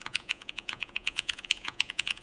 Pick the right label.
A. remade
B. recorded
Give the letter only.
A